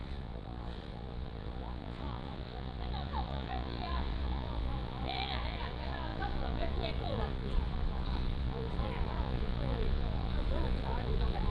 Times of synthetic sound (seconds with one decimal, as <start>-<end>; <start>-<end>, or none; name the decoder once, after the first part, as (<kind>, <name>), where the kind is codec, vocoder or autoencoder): 0.0-11.5 (vocoder, Vocos)

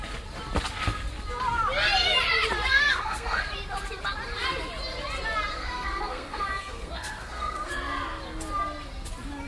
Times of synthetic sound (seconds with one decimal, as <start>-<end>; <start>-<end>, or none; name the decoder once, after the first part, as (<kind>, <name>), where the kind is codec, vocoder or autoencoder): 2.7-3.5 (codec, SNAC); 5.5-7.7

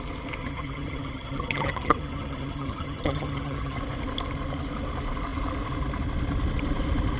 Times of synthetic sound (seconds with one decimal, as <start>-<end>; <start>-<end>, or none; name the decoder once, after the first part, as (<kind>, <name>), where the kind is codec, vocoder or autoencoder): 0.4-3.8 (vocoder, HiFi-GAN)